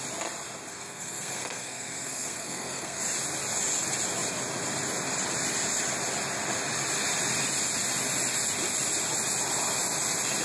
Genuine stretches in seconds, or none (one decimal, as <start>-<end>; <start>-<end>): 0.0-0.7; 3.0-10.4